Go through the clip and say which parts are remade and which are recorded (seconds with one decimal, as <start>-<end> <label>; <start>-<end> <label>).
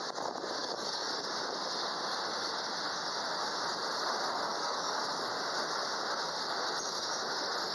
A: 0.0-0.6 recorded; 0.6-1.1 remade; 1.1-4.5 recorded; 4.5-5.0 remade; 5.0-7.7 recorded